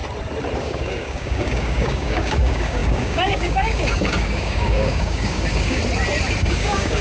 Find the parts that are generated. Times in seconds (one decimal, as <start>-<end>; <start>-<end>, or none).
0.6-5.8; 6.5-7.0